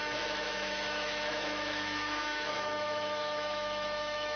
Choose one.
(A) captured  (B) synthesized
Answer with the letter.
B